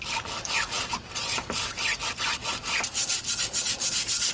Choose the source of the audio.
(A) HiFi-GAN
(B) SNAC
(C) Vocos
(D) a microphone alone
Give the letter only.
D